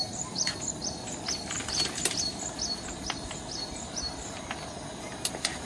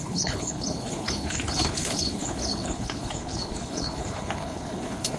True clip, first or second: first